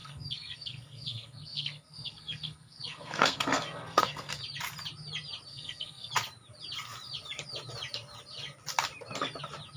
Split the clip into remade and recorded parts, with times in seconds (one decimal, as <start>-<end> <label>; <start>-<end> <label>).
0.0-4.4 remade; 4.4-5.5 recorded; 5.5-6.1 remade; 6.1-9.8 recorded